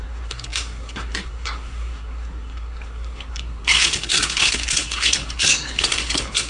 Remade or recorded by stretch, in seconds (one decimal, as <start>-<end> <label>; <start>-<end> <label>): 0.0-6.5 remade